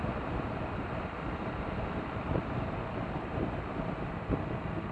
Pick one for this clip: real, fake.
fake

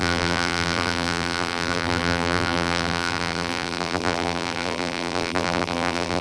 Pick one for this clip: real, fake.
fake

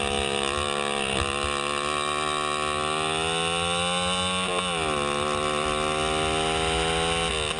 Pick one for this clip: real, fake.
real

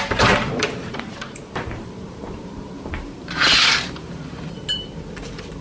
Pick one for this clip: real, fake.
fake